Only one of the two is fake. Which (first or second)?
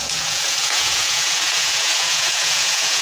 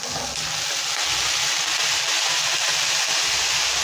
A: first